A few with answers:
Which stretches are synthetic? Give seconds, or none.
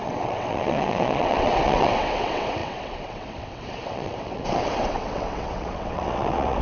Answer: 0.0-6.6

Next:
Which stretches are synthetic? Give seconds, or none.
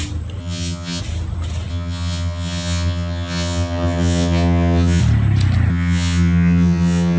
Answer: 0.4-1.0; 1.7-5.0; 5.7-7.2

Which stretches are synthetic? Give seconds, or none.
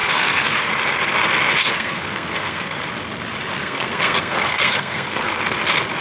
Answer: 0.0-0.7; 1.6-2.8; 3.6-5.4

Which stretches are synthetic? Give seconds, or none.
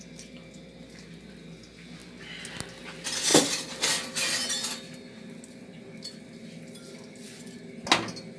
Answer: none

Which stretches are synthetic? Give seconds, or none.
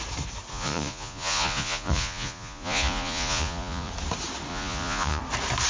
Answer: 0.5-3.9; 4.5-5.2